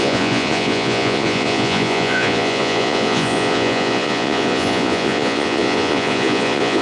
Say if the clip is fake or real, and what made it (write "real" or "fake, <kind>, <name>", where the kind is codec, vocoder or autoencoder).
fake, vocoder, Vocos